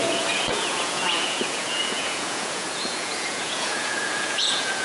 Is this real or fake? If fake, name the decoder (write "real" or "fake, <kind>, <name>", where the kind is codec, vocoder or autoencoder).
fake, vocoder, Vocos